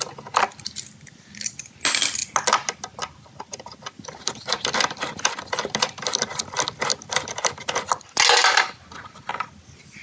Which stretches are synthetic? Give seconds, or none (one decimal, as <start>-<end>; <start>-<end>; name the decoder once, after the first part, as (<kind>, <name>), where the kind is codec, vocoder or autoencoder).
none